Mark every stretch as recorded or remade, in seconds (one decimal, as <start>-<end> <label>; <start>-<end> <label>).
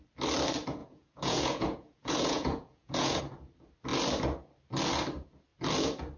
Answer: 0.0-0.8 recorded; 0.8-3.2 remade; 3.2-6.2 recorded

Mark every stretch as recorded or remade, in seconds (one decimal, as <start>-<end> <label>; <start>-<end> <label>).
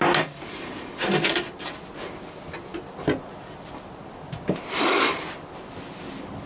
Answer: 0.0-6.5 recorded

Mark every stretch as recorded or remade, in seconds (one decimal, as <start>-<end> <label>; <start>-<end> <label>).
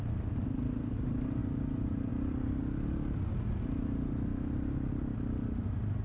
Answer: 0.0-2.6 remade; 2.6-3.3 recorded; 3.3-6.0 remade